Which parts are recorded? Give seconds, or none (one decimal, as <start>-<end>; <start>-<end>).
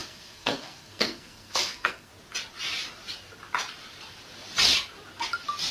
2.1-5.7